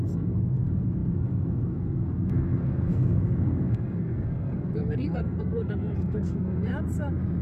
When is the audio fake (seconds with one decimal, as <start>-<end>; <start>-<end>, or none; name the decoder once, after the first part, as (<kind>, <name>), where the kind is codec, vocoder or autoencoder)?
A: 0.0-6.7 (codec, SNAC)